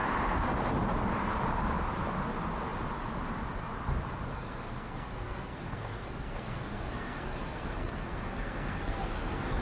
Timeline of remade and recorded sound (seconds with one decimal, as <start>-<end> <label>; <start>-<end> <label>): 0.0-4.3 recorded; 4.3-9.6 remade